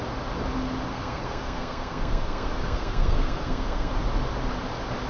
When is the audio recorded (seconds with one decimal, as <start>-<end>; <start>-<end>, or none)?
0.0-0.9; 3.9-5.1